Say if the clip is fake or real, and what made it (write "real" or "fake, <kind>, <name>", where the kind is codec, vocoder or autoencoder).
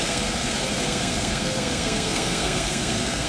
fake, codec, SNAC